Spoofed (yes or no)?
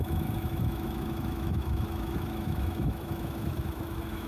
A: yes